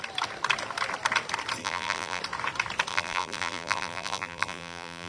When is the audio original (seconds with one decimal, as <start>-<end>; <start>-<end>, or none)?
0.0-1.6; 2.2-2.9